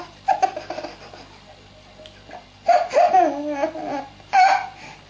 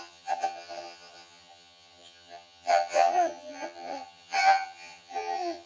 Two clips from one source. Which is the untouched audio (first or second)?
first